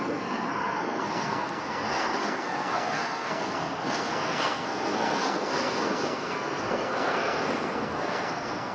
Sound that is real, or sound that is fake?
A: fake